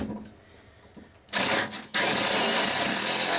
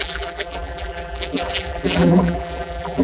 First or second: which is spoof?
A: second